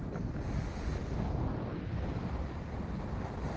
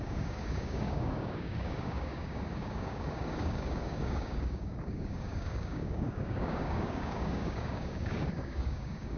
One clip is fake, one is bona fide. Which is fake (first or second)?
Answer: second